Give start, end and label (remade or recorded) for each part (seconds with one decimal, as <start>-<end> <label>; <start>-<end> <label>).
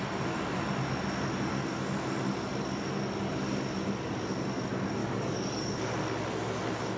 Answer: 0.0-5.0 recorded; 5.0-5.7 remade; 5.7-7.0 recorded